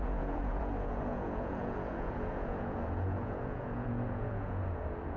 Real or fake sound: fake